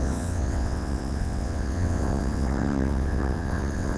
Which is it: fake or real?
fake